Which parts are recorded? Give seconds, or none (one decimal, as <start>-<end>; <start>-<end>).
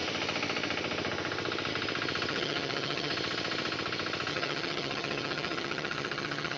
0.0-2.3; 3.1-4.3